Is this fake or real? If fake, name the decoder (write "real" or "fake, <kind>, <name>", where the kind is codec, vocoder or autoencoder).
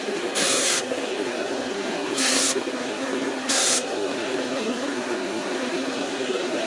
fake, codec, SNAC